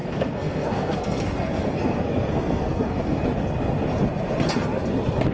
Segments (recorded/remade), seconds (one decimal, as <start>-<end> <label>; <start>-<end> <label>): 0.0-3.2 remade; 3.2-5.3 recorded